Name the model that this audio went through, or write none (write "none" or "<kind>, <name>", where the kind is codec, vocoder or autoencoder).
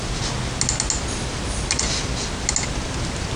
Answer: none